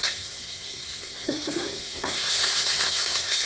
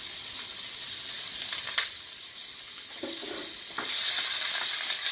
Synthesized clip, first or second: first